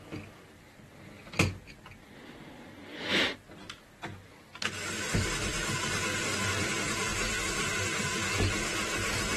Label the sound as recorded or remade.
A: recorded